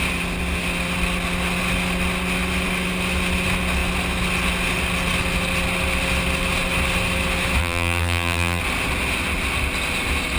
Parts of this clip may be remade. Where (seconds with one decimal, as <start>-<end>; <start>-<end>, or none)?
7.6-8.6

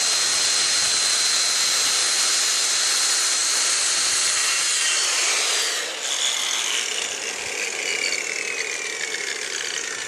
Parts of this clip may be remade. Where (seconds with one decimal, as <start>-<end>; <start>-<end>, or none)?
none

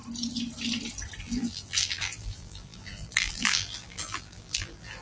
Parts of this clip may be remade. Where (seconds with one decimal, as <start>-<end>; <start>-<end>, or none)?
1.2-5.0